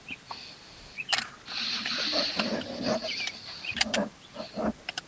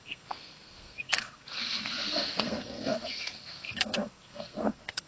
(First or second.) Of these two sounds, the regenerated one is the second